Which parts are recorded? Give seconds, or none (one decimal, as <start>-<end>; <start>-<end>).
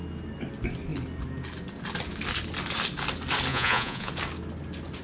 0.0-3.5; 4.1-5.0